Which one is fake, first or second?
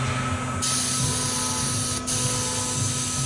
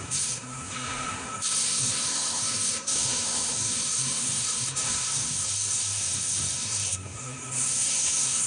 second